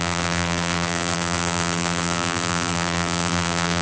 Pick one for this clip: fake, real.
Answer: fake